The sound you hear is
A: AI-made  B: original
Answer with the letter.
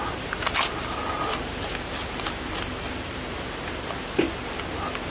B